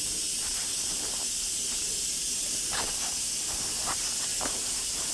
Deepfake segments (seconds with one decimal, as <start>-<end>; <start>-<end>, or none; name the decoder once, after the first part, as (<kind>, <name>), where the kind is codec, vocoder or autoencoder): 4.3-5.1 (vocoder, BigVGAN v2)